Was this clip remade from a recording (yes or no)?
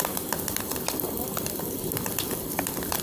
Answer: yes